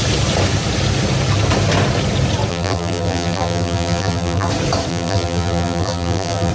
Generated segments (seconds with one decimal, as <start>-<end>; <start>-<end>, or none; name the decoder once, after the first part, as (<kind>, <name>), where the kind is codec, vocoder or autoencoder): 2.5-4.5 (vocoder, BigVGAN v2); 4.9-6.5